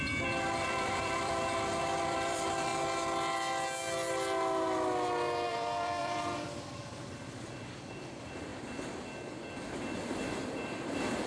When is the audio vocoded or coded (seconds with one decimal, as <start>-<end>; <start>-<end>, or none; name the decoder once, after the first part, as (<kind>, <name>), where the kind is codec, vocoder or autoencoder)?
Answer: 0.0-2.7 (vocoder, BigVGAN v2); 5.5-8.5; 9.9-11.3